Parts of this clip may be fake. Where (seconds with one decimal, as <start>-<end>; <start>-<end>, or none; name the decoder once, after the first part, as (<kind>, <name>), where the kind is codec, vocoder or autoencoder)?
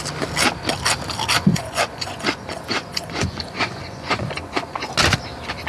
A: 1.5-4.9 (vocoder, Vocos)